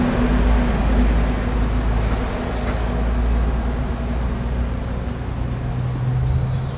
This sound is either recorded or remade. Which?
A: recorded